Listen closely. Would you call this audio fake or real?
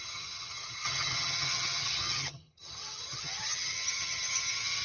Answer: fake